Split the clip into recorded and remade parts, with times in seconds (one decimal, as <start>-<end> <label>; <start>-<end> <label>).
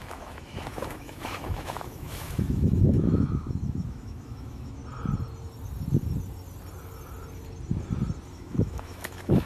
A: 0.0-4.8 remade; 4.8-8.3 recorded; 8.3-9.5 remade